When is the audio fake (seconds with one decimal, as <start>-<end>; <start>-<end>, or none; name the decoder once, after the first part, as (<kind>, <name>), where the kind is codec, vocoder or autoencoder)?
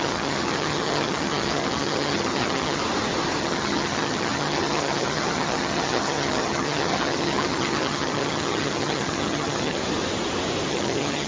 0.0-2.8 (vocoder, HiFi-GAN); 3.4-9.8; 10.7-11.3